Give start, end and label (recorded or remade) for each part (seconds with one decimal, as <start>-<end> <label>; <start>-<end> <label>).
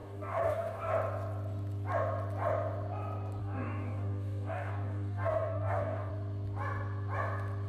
0.0-0.9 remade; 0.9-3.4 recorded; 3.4-6.1 remade; 6.1-7.7 recorded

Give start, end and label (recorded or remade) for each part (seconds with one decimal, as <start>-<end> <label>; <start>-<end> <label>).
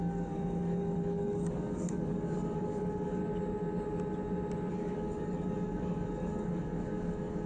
0.0-3.2 remade; 3.2-4.7 recorded; 4.7-7.5 remade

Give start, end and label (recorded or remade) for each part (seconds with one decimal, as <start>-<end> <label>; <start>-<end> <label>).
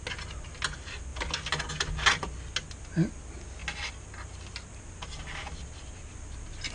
0.0-6.7 recorded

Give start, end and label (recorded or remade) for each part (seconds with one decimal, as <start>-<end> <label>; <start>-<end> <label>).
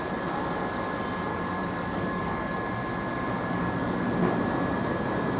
0.0-1.3 recorded; 1.3-2.7 remade; 2.7-3.1 recorded; 3.1-4.1 remade; 4.1-5.4 recorded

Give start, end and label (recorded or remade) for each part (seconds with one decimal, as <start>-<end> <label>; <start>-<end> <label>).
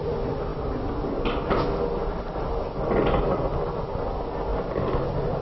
0.0-5.4 recorded